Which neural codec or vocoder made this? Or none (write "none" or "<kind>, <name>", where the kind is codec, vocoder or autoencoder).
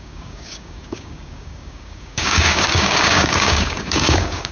codec, DAC